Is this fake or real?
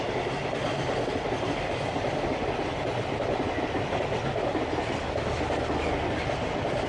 real